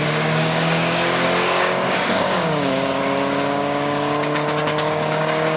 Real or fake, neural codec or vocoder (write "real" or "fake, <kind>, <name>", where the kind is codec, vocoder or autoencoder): fake, codec, DAC